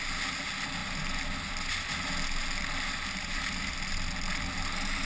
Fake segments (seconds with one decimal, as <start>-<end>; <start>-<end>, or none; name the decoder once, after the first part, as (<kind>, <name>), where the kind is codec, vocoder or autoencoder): none